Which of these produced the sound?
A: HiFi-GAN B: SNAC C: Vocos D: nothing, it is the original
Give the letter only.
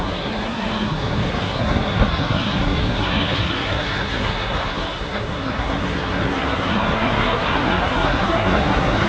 B